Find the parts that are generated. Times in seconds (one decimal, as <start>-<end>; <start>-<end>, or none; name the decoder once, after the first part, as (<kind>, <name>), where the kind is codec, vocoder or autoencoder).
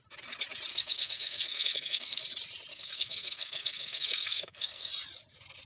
0.7-2.2 (codec, SNAC); 2.7-4.9